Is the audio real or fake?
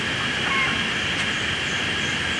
real